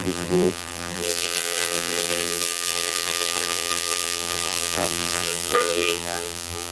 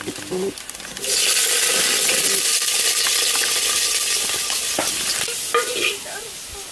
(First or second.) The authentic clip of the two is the second